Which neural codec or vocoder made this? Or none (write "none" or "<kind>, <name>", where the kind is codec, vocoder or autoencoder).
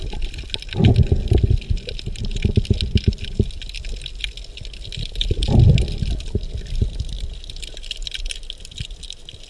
none